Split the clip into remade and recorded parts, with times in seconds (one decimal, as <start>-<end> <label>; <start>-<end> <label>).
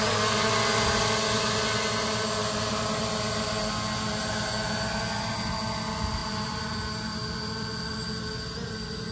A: 0.0-6.2 recorded; 6.2-6.8 remade; 6.8-9.1 recorded